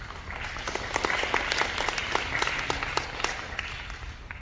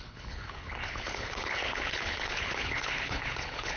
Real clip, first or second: first